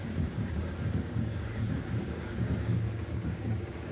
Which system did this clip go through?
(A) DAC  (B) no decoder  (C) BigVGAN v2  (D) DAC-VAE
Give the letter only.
A